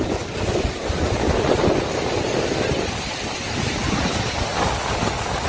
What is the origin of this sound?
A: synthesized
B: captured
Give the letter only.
B